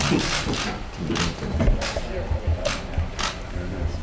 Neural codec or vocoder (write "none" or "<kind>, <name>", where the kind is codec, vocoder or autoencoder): none